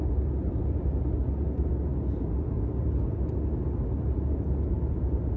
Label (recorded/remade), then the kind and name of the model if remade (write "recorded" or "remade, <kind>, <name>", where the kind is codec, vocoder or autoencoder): recorded